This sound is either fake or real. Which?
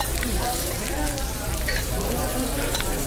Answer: fake